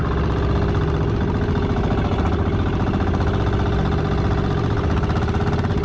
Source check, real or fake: real